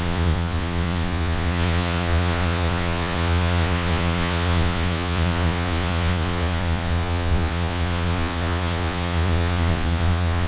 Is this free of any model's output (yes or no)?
no